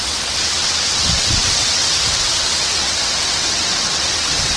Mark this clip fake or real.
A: fake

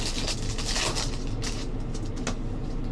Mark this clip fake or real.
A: real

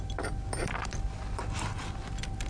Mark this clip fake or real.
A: real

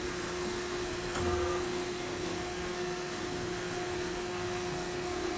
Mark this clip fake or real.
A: fake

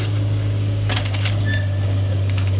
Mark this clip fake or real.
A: fake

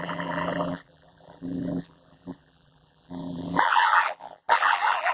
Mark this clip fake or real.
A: fake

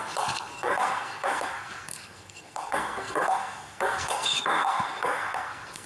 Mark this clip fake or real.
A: fake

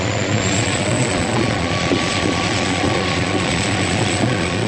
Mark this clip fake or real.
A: fake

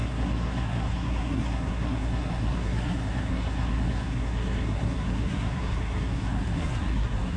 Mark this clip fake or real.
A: fake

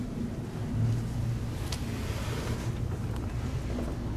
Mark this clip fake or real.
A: real